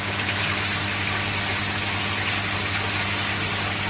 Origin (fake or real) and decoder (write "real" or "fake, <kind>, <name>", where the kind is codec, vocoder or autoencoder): real